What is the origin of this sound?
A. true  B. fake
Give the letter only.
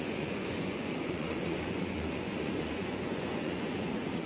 B